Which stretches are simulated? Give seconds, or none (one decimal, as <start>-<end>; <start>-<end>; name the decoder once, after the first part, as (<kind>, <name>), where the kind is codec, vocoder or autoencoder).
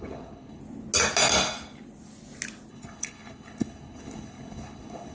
0.0-0.6 (codec, HILCodec); 2.7-5.1